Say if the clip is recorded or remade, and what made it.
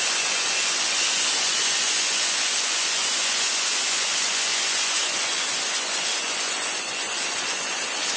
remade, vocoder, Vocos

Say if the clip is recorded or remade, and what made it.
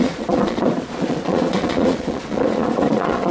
remade, vocoder, Vocos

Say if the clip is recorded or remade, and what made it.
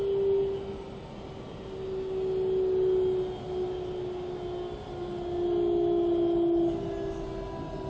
recorded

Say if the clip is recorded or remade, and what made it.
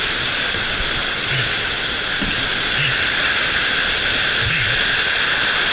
recorded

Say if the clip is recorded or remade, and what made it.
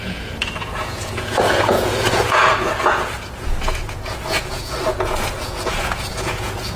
remade, vocoder, Vocos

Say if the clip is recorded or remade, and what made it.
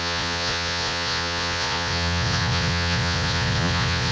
remade, vocoder, Vocos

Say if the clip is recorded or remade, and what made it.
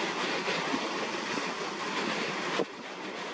recorded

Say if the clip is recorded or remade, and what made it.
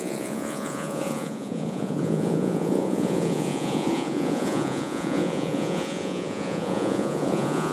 remade, vocoder, Vocos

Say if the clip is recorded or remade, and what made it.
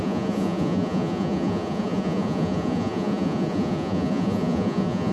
remade, vocoder, Vocos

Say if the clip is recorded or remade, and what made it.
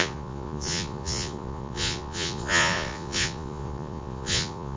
remade, vocoder, Vocos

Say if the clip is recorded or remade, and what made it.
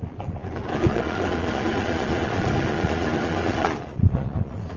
remade, vocoder, Vocos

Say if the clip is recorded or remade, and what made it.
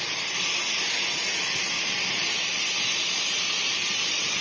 recorded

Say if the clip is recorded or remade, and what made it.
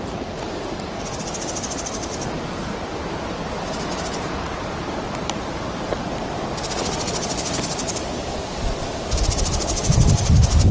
recorded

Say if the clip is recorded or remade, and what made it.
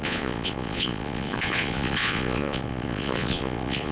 remade, vocoder, Vocos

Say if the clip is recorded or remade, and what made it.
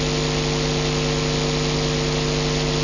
recorded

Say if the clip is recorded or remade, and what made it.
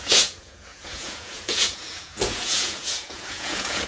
remade, vocoder, Vocos